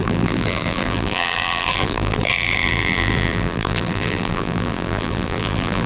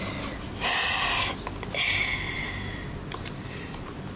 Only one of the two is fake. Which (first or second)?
first